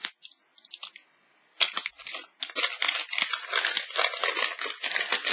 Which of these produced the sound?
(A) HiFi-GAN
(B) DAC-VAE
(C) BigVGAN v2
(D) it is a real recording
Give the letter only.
D